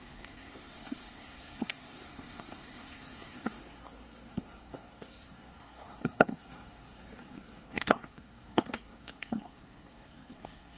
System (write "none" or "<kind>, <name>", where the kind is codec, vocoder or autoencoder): codec, SNAC